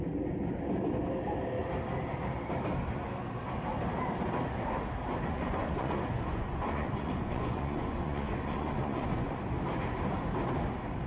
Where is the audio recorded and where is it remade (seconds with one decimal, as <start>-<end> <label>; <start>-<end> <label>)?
0.0-5.3 recorded; 5.3-9.4 remade; 9.4-11.1 recorded